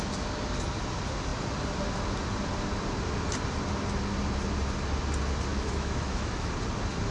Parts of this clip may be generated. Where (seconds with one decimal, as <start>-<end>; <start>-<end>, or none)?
5.5-6.5